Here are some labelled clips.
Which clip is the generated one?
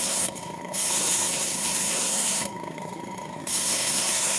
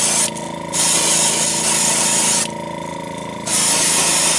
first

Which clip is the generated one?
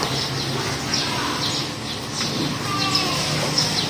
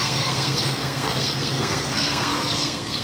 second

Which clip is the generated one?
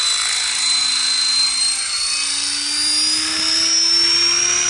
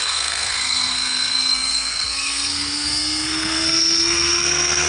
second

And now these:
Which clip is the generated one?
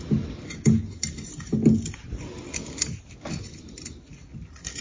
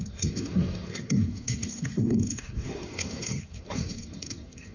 second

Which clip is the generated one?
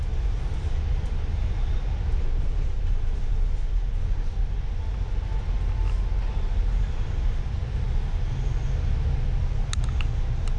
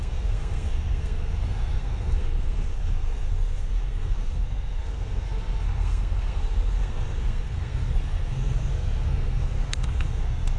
second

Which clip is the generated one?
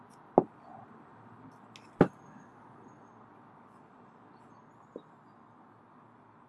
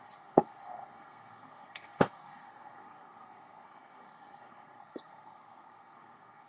second